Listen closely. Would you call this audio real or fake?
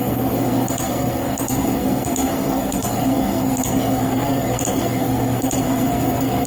fake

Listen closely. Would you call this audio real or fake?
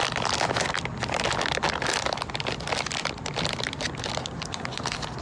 real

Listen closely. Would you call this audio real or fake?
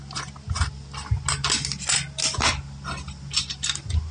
real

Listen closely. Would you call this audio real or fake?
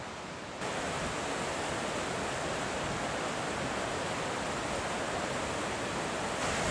real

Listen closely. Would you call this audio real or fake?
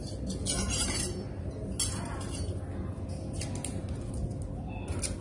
real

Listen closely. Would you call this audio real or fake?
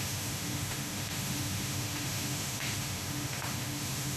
fake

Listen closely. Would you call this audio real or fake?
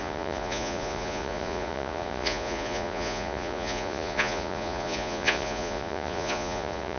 fake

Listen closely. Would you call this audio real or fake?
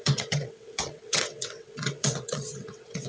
fake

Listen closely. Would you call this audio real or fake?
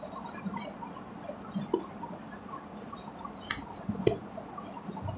real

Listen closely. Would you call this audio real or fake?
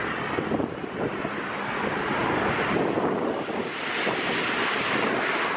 real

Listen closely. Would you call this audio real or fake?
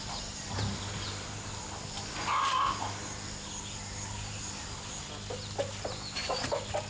real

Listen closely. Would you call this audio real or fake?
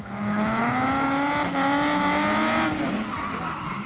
real